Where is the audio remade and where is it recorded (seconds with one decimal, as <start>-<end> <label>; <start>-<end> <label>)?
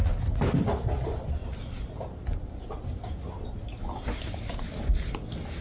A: 0.0-5.6 recorded